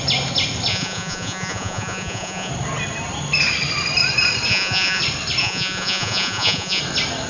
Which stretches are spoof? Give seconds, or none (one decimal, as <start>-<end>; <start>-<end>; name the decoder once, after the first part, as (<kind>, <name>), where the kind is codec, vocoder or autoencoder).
0.7-2.5 (vocoder, Vocos); 4.5-5.0; 5.4-6.8